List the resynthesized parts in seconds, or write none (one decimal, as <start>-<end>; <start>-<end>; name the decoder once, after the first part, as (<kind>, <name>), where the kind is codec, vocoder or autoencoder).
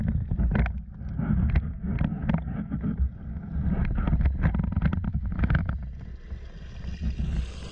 5.1-5.7 (autoencoder, DAC-VAE)